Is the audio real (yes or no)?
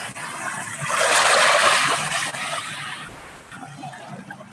no